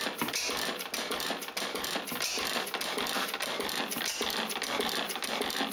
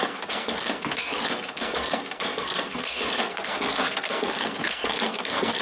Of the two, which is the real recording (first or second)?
first